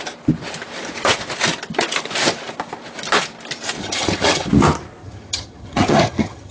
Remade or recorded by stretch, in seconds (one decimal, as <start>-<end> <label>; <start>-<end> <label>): 0.0-3.8 recorded; 3.8-4.5 remade; 4.5-5.0 recorded; 5.0-6.5 remade